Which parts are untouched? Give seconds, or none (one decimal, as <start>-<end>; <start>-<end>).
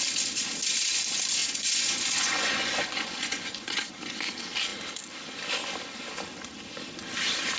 0.0-1.4; 3.9-7.6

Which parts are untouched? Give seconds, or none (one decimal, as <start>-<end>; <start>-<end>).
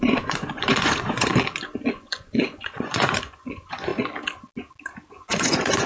1.3-1.9; 3.9-5.1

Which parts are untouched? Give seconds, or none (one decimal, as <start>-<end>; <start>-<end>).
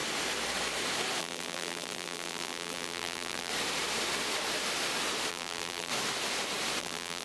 0.0-1.2; 3.5-5.3; 5.9-6.8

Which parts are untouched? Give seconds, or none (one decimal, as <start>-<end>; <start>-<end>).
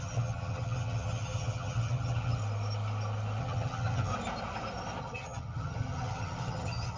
2.4-3.4; 4.1-5.0